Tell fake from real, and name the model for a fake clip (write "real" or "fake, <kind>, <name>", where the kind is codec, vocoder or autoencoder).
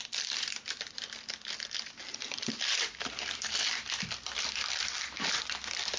fake, vocoder, BigVGAN v2